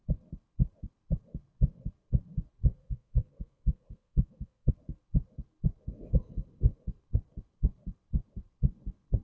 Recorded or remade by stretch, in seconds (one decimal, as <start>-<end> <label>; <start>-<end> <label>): 0.0-2.8 recorded; 2.8-4.7 remade; 4.7-9.2 recorded